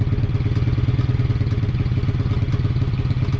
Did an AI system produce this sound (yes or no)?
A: no